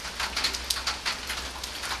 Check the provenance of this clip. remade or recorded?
recorded